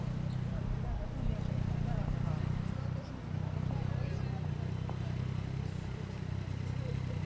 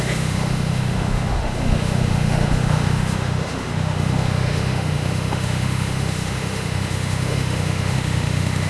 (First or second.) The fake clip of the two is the second